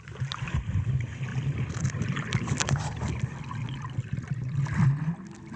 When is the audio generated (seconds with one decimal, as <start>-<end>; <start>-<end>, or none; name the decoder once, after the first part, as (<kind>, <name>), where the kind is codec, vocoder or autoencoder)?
1.3-3.4 (vocoder, BigVGAN v2)